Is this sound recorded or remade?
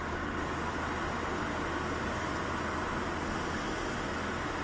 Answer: recorded